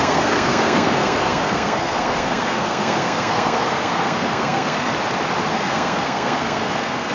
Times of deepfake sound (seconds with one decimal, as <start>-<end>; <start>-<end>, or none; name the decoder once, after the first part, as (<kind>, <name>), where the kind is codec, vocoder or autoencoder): 0.0-4.9 (codec, SNAC); 5.5-7.1